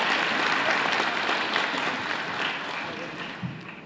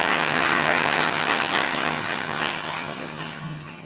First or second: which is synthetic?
second